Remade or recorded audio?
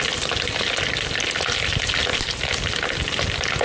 recorded